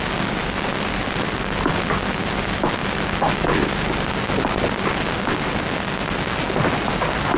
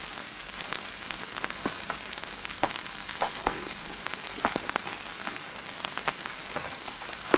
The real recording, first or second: first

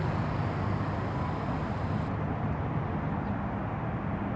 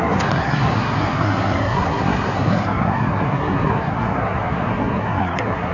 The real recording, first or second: first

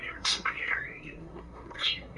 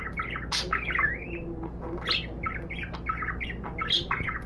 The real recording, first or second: second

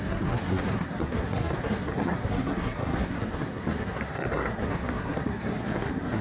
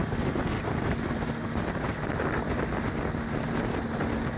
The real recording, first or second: second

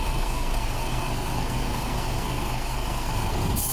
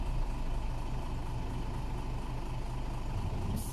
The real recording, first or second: second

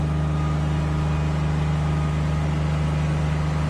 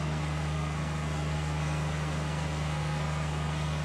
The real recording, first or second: first